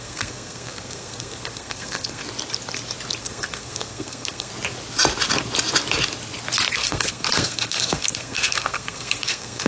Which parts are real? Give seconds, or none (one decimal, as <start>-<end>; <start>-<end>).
2.2-3.2; 4.5-6.7